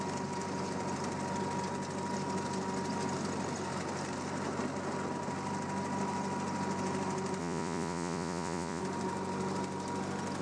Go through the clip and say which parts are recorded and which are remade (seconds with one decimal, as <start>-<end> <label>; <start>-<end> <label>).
0.0-7.4 recorded; 7.4-8.8 remade; 8.8-10.4 recorded